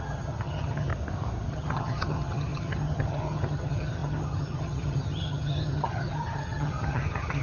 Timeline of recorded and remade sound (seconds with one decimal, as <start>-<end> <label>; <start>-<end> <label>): 0.0-0.9 remade; 0.9-1.5 recorded; 1.5-7.4 remade

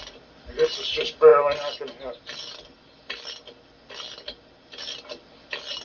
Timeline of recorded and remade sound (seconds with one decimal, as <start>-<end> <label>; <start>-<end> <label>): 0.0-5.8 recorded

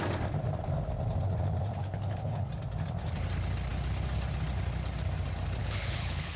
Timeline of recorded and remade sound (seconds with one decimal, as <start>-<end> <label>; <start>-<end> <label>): 0.0-1.8 recorded; 1.8-2.5 remade; 2.5-5.6 recorded; 5.6-6.4 remade

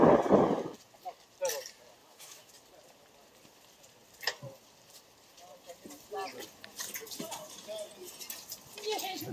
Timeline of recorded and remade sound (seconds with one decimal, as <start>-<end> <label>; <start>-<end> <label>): 0.0-2.0 recorded; 2.0-2.5 remade; 2.5-9.3 recorded